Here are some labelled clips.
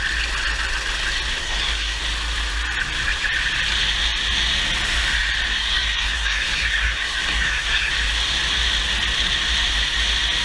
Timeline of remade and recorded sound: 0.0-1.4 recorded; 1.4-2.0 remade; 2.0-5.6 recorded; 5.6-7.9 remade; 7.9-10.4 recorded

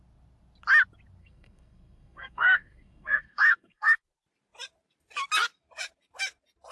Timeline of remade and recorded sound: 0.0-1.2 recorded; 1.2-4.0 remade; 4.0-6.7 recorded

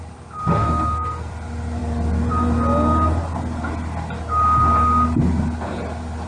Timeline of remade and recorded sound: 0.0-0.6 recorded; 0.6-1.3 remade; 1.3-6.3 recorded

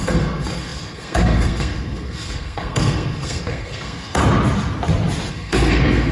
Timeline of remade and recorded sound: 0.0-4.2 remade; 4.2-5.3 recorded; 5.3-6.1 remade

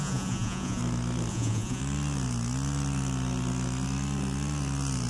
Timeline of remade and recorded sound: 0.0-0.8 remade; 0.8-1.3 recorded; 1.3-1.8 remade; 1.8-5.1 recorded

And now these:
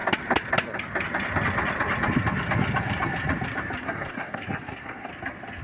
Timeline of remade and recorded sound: 0.0-3.8 recorded; 3.8-5.1 remade; 5.1-5.6 recorded

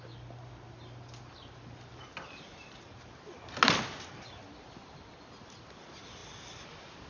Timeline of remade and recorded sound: 0.0-7.1 recorded